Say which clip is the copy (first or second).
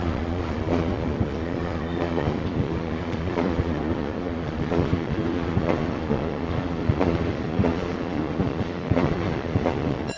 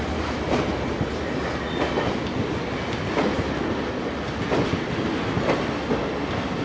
first